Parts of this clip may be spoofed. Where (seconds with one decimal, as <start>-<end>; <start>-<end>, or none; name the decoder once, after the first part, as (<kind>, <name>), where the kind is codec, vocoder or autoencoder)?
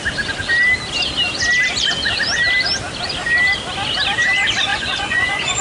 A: 4.7-5.6 (vocoder, Vocos)